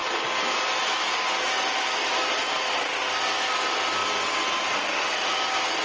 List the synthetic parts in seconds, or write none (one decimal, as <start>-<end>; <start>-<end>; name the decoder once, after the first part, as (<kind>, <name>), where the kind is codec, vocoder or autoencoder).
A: none